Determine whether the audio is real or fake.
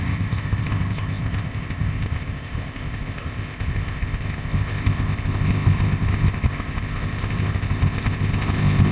fake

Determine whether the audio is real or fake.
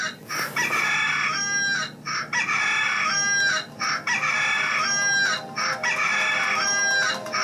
real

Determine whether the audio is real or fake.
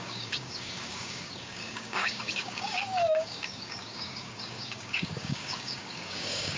fake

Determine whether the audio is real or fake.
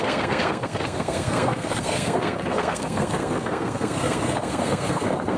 fake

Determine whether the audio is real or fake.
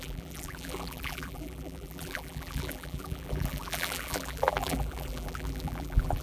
fake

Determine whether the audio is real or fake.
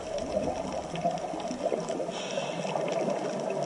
real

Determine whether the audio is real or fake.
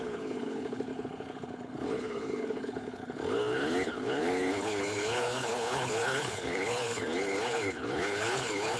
fake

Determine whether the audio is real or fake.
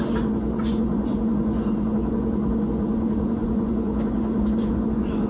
fake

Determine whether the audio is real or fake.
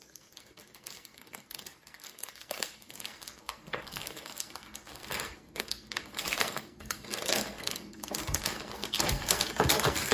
fake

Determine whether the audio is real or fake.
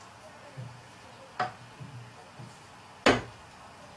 real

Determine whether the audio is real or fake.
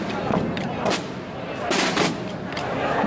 real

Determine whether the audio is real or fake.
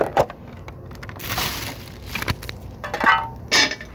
real